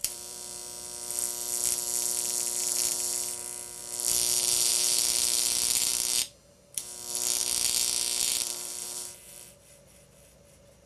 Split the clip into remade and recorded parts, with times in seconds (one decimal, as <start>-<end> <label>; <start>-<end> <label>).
0.0-0.6 remade; 0.6-2.6 recorded; 2.6-5.9 remade; 5.9-6.5 recorded; 6.5-7.4 remade; 7.4-8.3 recorded; 8.3-10.9 remade

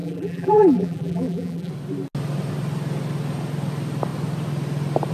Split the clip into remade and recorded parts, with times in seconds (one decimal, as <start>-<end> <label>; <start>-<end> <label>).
0.0-1.7 remade; 1.7-5.1 recorded

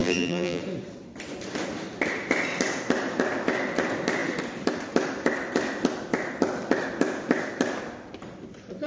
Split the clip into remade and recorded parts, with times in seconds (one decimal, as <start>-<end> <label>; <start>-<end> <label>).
0.0-0.6 remade; 0.6-8.9 recorded

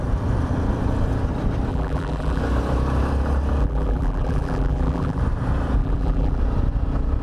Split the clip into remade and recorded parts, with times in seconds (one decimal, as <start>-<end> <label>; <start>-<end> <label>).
0.0-1.7 recorded; 1.7-2.4 remade; 2.4-3.6 recorded; 3.6-5.2 remade; 5.2-5.8 recorded; 5.8-6.4 remade; 6.4-7.2 recorded

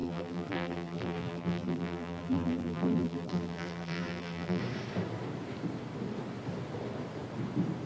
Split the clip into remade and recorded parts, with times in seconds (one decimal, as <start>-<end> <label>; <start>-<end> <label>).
0.0-4.6 remade; 4.6-7.9 recorded